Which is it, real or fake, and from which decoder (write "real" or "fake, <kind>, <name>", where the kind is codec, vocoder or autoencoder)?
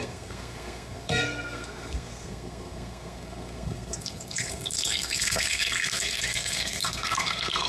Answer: fake, codec, SNAC